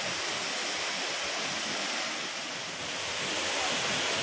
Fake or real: fake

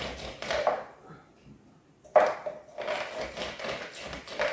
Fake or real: real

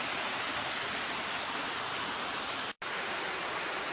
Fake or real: real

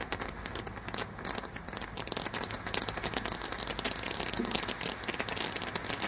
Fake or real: real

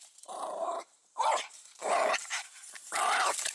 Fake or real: fake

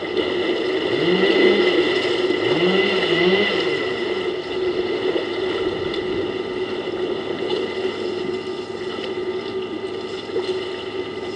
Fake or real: real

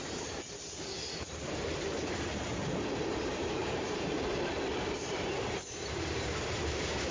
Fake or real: fake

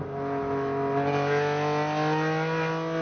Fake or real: real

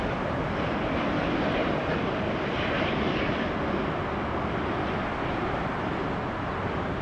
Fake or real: real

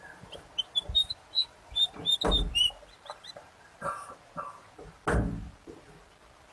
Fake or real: real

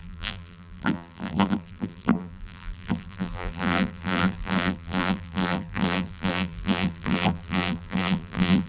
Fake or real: fake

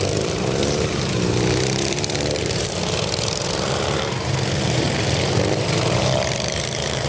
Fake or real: fake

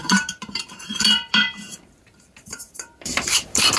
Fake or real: fake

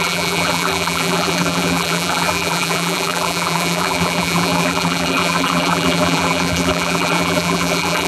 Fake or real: fake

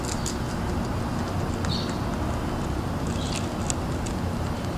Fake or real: real